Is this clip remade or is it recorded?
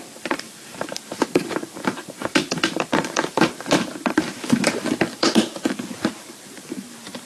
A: remade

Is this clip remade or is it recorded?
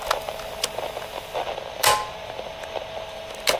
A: recorded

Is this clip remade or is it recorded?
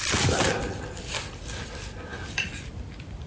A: recorded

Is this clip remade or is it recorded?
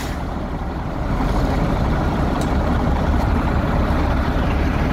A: remade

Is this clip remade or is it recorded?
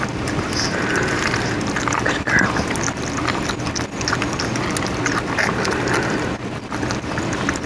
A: recorded